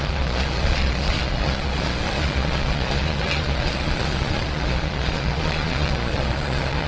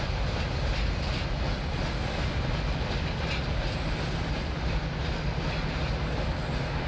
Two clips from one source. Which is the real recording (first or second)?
second